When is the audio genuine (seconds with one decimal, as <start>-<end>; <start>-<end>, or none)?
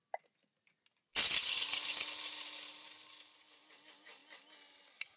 0.0-5.2